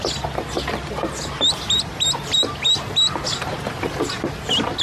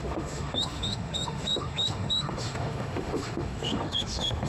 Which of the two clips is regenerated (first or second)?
second